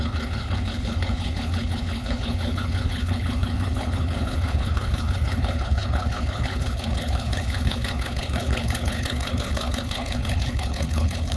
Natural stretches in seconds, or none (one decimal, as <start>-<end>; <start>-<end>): none